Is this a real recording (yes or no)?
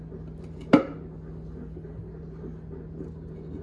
yes